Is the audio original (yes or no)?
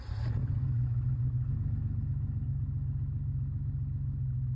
yes